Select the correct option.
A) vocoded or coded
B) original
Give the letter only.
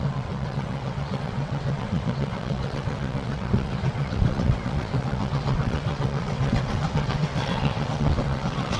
A